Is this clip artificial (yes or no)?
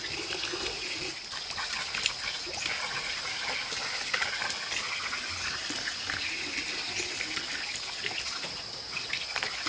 no